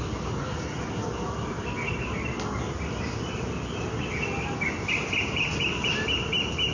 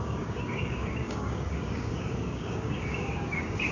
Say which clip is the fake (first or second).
second